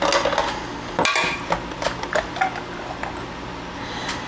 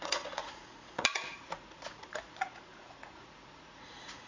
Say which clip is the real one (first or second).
first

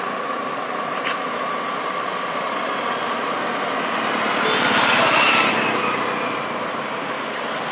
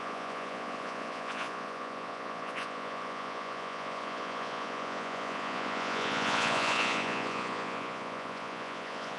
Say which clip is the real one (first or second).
first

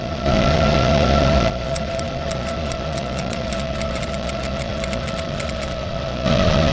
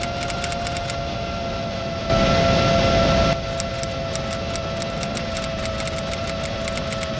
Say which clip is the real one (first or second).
second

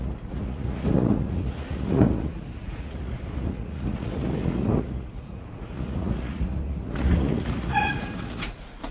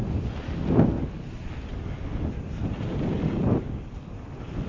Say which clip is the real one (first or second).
second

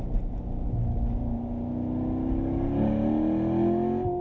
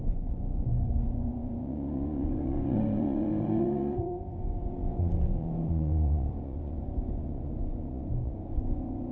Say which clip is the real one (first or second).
first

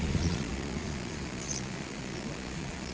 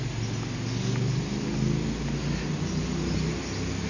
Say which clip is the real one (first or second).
second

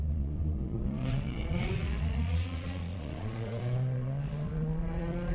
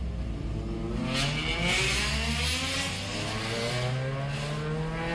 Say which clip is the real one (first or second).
second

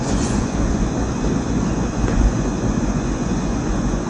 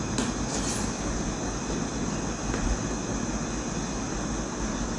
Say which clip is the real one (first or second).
second